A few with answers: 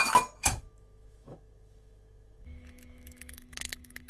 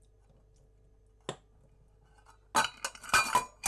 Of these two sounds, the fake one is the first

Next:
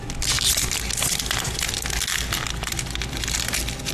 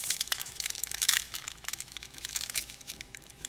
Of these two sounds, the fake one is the second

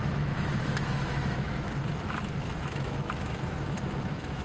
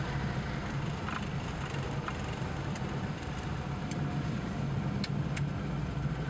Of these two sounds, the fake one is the first